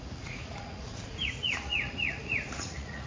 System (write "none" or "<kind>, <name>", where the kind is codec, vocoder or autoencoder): vocoder, Vocos